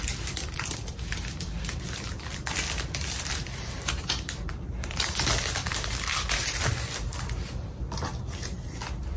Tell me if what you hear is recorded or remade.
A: remade